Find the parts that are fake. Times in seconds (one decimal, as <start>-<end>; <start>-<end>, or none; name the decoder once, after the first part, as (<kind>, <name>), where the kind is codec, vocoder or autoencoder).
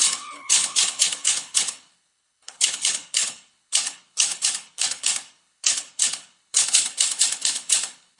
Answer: 0.0-8.2 (codec, HILCodec)